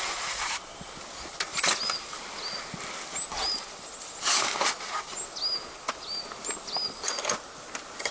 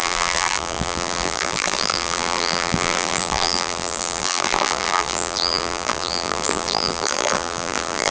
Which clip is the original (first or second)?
first